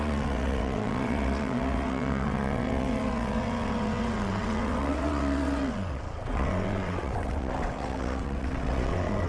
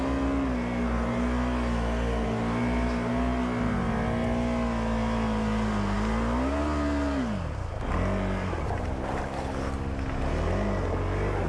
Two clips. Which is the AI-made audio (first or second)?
first